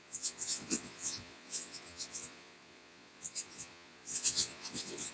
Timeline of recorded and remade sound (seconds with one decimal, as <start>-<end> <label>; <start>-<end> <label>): 0.0-5.1 remade

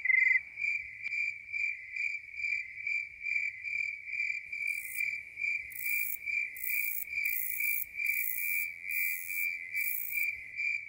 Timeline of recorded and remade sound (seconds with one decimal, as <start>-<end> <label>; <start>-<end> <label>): 0.0-8.4 recorded; 8.4-9.8 remade; 9.8-10.9 recorded